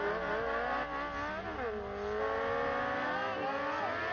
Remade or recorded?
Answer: recorded